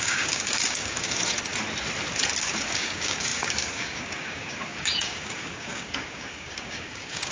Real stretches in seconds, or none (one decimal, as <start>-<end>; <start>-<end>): 1.5-2.4